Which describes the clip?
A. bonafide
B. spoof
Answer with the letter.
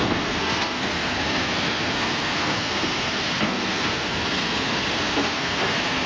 B